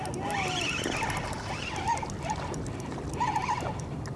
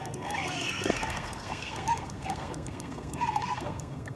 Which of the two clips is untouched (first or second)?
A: first